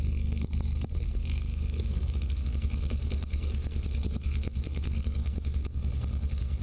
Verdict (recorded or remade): remade